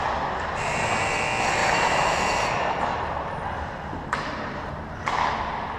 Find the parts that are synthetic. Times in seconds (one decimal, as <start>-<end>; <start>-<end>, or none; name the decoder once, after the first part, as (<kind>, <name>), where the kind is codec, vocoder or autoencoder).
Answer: 1.6-4.7 (vocoder, BigVGAN v2)